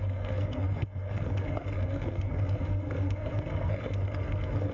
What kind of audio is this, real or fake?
fake